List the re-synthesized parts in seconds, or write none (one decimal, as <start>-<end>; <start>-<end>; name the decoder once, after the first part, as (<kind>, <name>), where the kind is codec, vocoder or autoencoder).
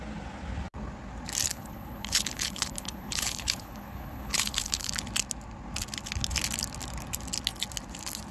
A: 1.5-4.9 (codec, HILCodec)